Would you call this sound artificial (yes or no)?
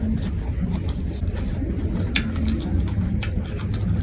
no